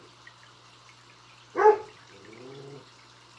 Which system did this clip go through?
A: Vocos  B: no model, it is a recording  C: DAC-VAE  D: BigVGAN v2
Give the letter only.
B